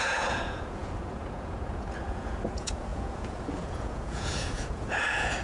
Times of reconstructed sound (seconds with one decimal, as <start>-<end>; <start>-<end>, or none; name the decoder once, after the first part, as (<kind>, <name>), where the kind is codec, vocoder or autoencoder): 0.0-5.4 (vocoder, Vocos)

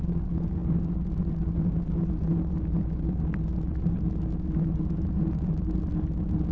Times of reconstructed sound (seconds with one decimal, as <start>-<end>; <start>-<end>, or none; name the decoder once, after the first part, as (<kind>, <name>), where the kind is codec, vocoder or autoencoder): none

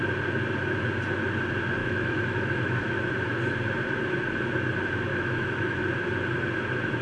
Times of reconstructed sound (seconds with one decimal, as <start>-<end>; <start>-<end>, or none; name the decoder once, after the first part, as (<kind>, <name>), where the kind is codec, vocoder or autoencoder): 1.8-3.4 (autoencoder, DAC-VAE); 5.1-5.8